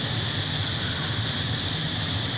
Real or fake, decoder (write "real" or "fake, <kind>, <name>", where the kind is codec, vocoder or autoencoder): real